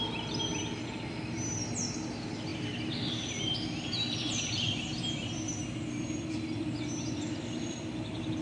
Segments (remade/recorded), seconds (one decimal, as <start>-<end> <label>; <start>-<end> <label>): 0.0-8.4 recorded